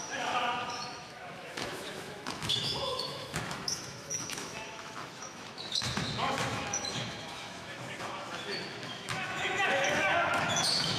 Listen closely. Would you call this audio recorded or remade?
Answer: remade